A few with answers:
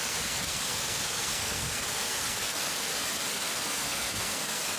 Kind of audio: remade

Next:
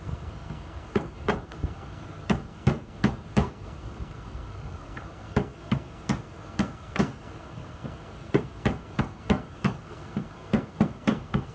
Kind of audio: remade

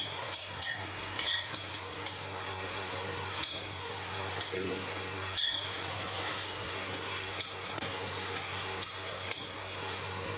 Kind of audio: remade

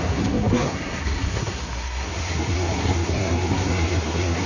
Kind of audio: remade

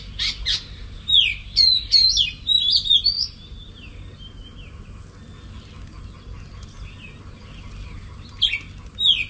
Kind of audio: recorded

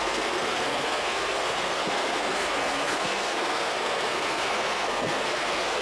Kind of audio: remade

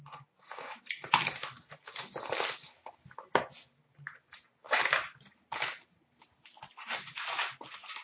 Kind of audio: recorded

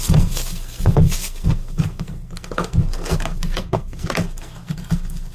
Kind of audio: remade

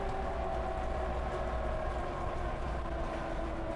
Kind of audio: recorded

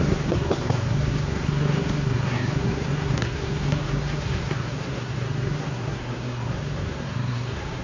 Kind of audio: remade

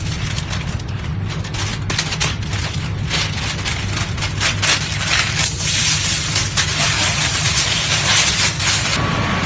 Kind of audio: recorded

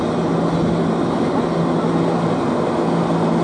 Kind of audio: recorded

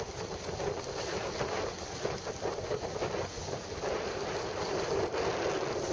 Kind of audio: recorded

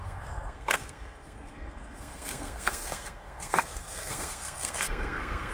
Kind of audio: remade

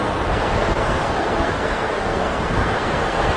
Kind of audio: remade